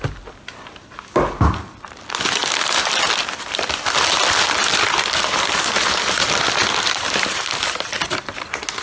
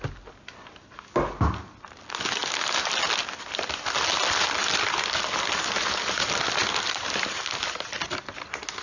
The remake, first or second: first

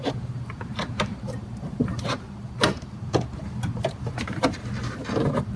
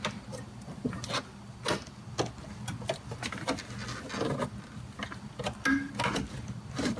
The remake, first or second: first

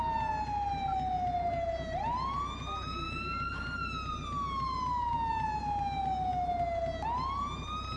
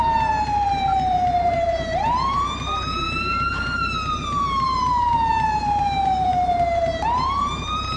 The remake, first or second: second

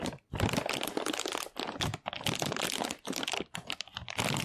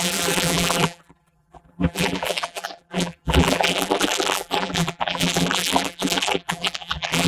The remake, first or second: second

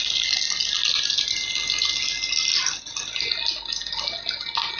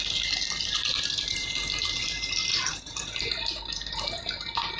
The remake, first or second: second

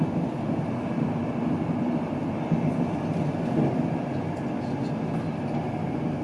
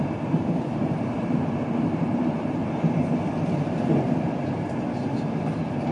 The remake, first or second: second